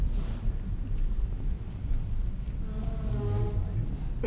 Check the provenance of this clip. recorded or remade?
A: recorded